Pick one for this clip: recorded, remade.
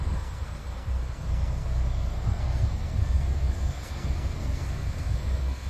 remade